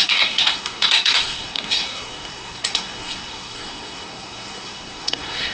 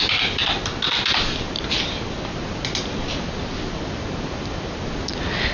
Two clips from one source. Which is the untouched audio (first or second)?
second